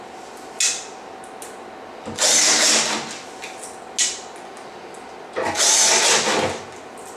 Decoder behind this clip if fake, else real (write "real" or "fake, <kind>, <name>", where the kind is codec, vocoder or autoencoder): real